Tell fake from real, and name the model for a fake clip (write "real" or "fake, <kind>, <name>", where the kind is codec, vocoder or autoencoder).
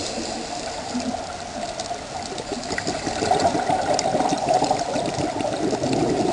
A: real